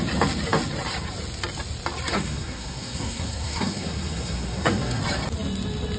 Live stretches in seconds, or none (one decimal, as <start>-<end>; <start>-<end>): 0.0-2.1; 5.0-6.0